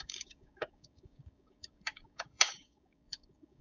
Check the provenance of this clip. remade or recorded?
remade